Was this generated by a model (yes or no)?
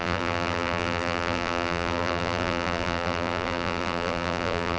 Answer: yes